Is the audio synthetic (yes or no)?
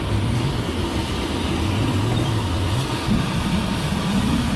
no